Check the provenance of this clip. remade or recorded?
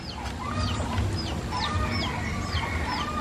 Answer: recorded